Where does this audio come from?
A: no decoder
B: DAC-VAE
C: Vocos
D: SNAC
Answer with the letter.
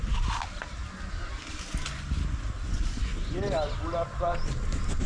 A